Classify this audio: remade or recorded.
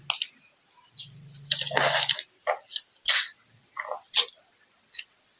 recorded